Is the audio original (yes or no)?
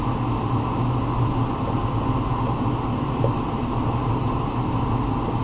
yes